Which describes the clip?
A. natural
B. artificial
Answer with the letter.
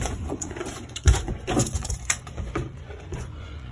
B